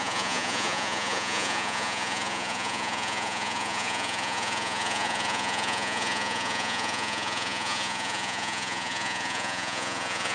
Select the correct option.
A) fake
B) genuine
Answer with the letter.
A